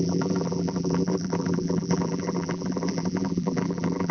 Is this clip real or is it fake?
fake